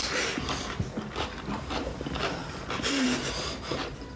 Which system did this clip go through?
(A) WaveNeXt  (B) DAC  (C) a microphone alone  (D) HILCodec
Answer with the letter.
C